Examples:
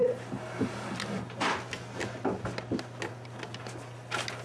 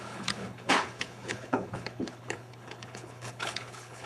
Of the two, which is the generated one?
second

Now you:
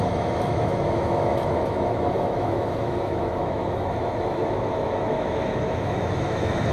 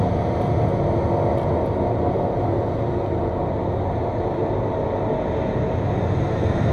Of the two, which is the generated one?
first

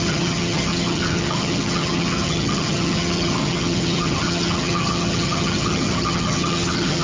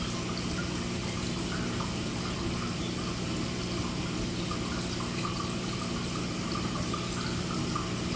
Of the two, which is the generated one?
first